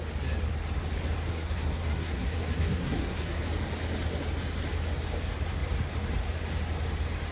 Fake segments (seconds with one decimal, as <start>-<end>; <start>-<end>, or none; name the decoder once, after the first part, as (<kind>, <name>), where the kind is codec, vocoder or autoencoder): 1.3-3.4 (codec, SNAC)